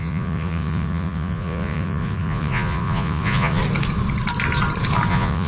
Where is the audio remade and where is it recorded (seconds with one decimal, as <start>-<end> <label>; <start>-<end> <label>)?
0.0-3.6 remade; 3.6-5.1 recorded; 5.1-5.5 remade